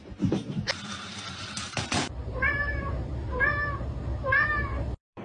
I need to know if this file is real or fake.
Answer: fake